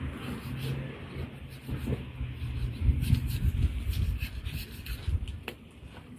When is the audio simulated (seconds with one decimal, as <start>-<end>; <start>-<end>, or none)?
none